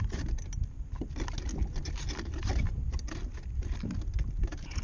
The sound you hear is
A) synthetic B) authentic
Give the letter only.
B